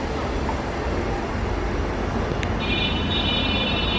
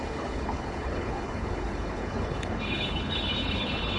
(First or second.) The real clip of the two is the first